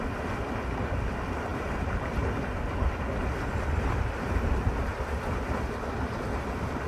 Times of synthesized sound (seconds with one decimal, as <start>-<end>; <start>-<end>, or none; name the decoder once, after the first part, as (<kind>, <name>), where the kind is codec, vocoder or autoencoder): none